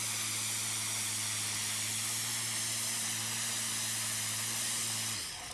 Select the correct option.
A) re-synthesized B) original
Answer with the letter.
B